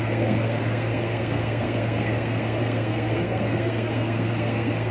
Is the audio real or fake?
fake